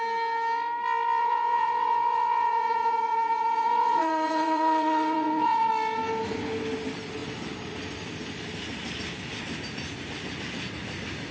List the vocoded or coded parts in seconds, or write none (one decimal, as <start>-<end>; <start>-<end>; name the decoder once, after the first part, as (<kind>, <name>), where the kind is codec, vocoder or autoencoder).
1.2-5.7 (vocoder, WaveNeXt)